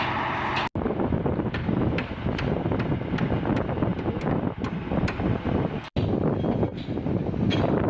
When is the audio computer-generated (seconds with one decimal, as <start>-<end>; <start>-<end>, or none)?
none

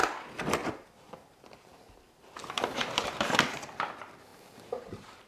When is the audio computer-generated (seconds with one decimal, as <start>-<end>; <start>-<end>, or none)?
0.6-3.8; 4.3-5.3

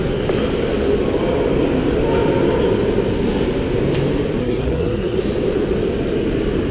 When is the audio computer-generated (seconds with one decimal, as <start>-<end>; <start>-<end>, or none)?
4.4-5.2

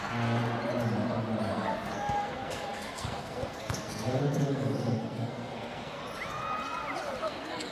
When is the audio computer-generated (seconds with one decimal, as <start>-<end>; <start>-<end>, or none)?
0.0-0.4; 1.5-6.0; 7.2-7.7

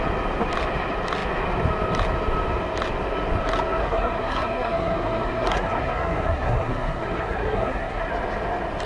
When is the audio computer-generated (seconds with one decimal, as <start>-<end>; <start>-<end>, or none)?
3.8-8.1